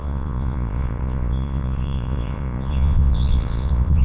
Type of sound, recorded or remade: remade